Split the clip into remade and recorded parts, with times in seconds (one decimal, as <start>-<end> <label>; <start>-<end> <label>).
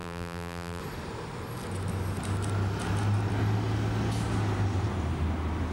0.0-0.8 remade; 0.8-5.7 recorded